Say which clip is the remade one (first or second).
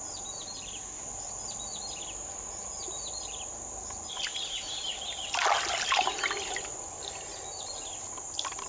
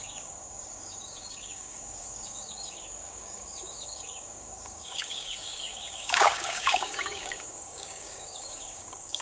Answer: second